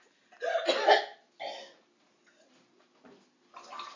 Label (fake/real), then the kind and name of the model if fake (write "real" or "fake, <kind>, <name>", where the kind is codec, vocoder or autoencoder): real